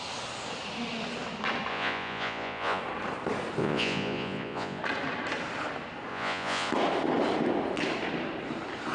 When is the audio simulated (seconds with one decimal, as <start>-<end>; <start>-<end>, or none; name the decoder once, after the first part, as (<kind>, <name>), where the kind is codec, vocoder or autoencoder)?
1.7-2.8 (vocoder, Vocos); 3.6-4.8; 6.1-6.7